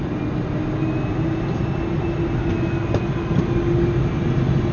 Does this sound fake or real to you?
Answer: real